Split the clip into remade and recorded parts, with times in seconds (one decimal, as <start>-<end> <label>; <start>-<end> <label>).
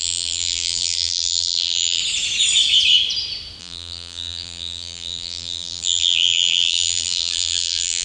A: 0.0-2.0 remade; 2.0-3.6 recorded; 3.6-8.0 remade